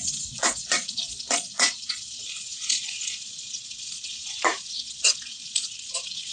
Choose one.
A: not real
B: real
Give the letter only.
A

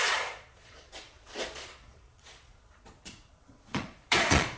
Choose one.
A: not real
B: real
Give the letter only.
A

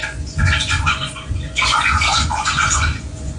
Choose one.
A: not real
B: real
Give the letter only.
A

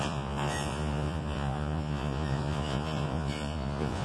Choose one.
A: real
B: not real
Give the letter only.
B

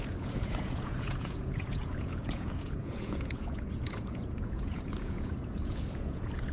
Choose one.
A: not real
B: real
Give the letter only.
A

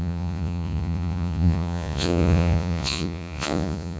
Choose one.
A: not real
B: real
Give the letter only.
A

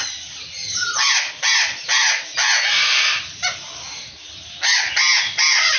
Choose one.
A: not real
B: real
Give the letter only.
B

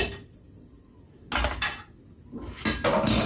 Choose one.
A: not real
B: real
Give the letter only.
B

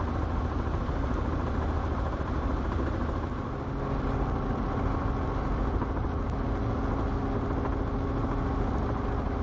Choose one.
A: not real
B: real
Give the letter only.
B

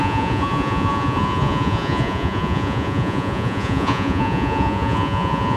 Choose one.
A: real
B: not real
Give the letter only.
B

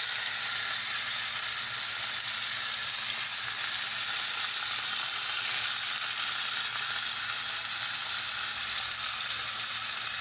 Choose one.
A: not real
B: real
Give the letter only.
B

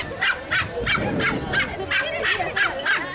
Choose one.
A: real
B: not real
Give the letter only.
A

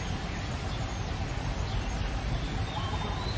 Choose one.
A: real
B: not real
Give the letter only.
A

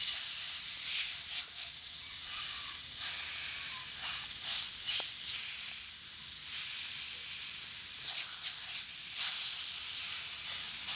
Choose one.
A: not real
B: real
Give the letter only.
B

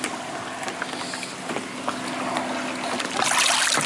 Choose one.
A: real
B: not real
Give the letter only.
A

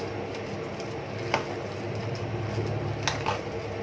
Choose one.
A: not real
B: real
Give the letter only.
B